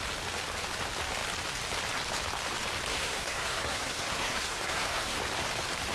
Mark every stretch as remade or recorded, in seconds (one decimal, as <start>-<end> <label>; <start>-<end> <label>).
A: 0.0-2.9 recorded; 2.9-5.2 remade; 5.2-5.9 recorded